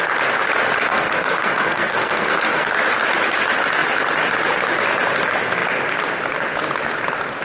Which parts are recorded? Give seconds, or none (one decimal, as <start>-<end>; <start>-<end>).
0.0-0.9; 2.7-7.4